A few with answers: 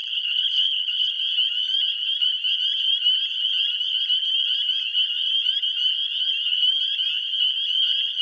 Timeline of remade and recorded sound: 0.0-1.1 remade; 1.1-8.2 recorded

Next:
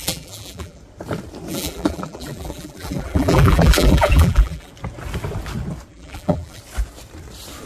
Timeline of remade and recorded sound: 0.0-0.8 remade; 0.8-1.5 recorded; 1.5-4.7 remade; 4.7-5.9 recorded; 5.9-6.6 remade; 6.6-7.7 recorded

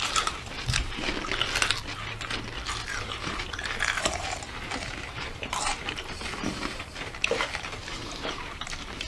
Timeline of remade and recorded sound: 0.0-1.1 remade; 1.1-2.9 recorded; 2.9-9.1 remade

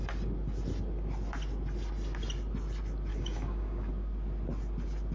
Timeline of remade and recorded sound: 0.0-3.1 recorded; 3.1-3.9 remade; 3.9-5.1 recorded